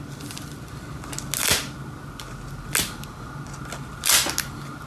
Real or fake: real